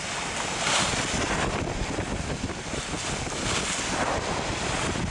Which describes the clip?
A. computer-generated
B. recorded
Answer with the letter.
B